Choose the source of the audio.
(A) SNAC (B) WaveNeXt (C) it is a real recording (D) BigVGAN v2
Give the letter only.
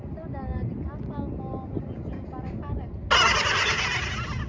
C